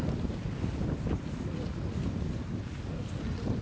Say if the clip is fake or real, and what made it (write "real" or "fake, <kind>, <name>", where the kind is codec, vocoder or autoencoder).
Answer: real